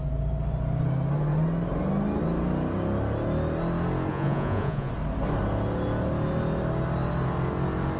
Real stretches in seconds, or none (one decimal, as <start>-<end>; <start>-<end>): 0.0-4.1; 4.9-8.0